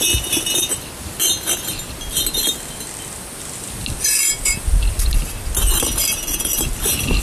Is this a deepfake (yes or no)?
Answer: no